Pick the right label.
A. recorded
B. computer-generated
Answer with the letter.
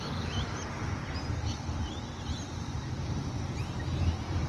A